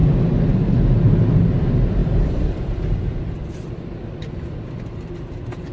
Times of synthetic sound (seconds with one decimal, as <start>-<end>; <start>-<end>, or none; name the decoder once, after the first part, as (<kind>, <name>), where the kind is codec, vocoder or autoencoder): 2.0-3.5 (vocoder, BigVGAN v2)